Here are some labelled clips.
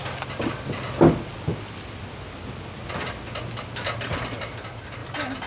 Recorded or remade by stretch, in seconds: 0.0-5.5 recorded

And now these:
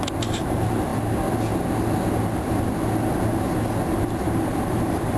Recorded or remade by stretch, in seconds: 0.0-0.9 remade; 0.9-4.0 recorded; 4.0-5.2 remade